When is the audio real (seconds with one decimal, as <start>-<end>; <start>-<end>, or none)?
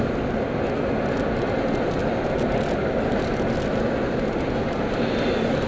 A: 0.0-5.7